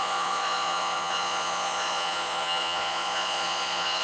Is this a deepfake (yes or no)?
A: yes